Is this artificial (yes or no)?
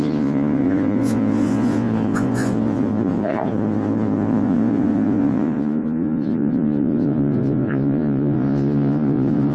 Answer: yes